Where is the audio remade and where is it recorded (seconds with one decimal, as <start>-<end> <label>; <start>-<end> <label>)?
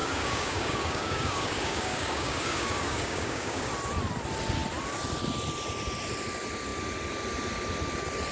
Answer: 0.0-3.7 remade; 3.7-8.3 recorded